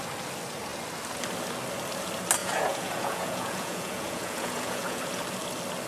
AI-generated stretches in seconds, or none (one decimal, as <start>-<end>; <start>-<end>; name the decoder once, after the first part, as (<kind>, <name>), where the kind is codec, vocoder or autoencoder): 2.4-5.2 (vocoder, Vocos)